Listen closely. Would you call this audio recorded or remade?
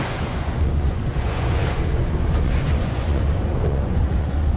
remade